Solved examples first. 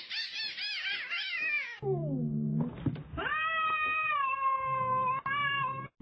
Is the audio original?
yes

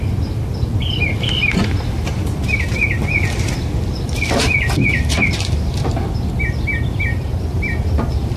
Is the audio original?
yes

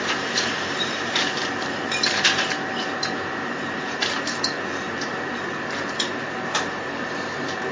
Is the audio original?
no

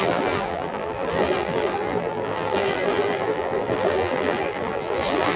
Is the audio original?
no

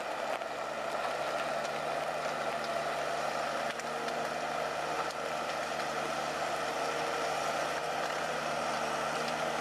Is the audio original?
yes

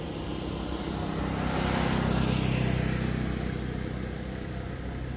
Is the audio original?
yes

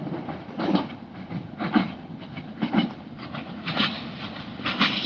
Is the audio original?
no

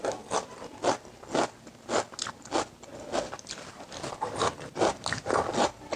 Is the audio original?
yes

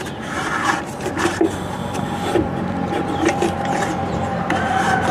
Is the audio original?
yes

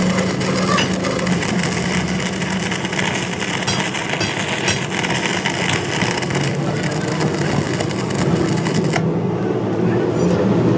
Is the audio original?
yes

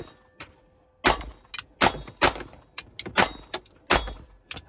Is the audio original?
yes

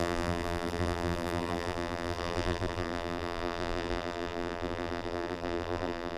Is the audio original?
no